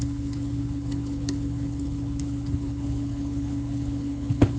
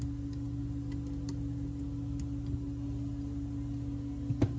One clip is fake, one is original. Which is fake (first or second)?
first